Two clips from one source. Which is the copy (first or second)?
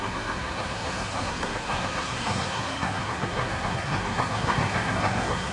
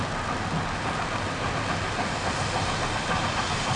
first